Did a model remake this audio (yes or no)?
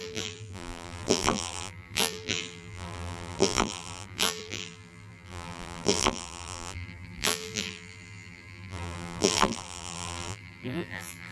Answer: yes